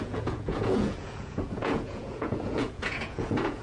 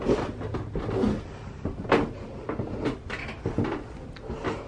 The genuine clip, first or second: second